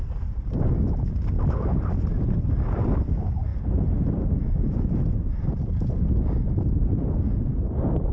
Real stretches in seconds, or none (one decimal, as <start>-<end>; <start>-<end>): 0.0-8.1